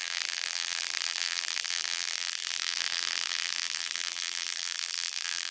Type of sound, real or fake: fake